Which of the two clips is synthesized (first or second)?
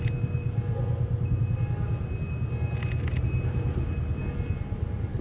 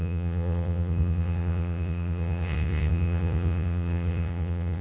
second